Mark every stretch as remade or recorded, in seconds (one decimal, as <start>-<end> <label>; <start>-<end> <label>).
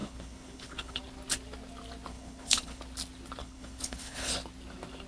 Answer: 0.0-1.0 remade; 1.0-2.1 recorded; 2.1-2.8 remade; 2.8-3.4 recorded; 3.4-4.3 remade; 4.3-5.1 recorded